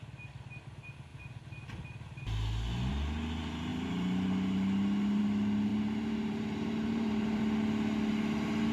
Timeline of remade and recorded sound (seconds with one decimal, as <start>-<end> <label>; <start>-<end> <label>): 0.0-5.7 recorded; 5.7-7.4 remade; 7.4-8.7 recorded